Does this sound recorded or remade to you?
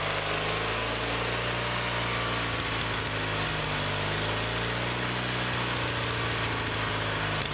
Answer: recorded